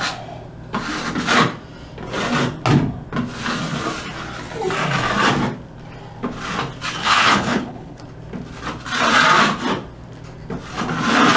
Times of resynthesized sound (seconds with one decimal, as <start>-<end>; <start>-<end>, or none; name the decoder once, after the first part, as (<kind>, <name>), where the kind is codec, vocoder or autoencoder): 7.0-8.0 (codec, HILCodec)